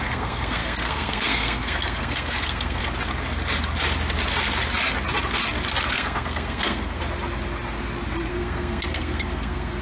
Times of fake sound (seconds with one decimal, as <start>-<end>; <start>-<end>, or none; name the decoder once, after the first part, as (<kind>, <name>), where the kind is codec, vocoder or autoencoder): 0.0-2.8 (codec, SNAC); 5.9-7.0; 8.3-9.8